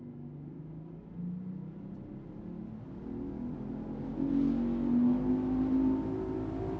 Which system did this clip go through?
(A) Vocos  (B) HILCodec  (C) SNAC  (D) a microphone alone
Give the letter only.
D